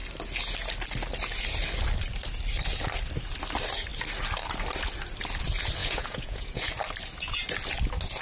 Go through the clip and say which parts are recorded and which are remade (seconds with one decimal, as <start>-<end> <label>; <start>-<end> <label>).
0.0-5.8 recorded; 5.8-6.7 remade; 6.7-8.2 recorded